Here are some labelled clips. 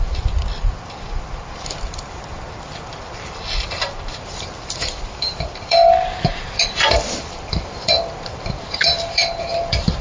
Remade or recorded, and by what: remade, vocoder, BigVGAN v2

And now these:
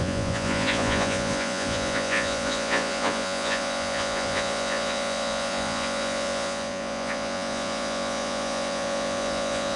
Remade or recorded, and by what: remade, vocoder, Vocos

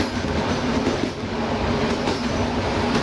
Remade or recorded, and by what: recorded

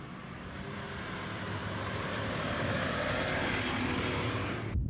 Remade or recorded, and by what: recorded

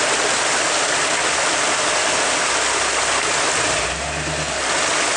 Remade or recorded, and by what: recorded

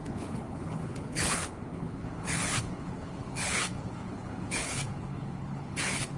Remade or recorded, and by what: remade, codec, HILCodec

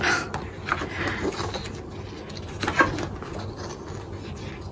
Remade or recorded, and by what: recorded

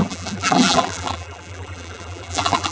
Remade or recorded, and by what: remade, vocoder, BigVGAN v2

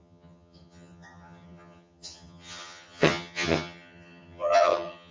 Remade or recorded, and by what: remade, vocoder, HiFi-GAN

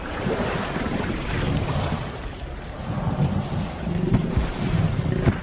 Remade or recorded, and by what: remade, vocoder, BigVGAN v2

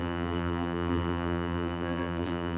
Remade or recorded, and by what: remade, vocoder, BigVGAN v2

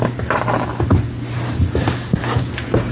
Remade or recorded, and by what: recorded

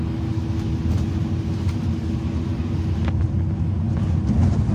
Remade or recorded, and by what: recorded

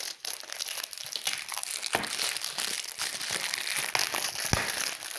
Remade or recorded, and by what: recorded